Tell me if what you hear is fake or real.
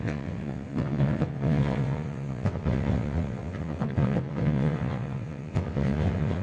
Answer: fake